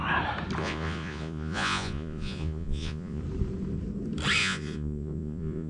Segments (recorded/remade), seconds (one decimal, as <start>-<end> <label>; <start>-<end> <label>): 0.0-0.6 recorded; 0.6-3.2 remade; 3.2-4.4 recorded; 4.4-5.7 remade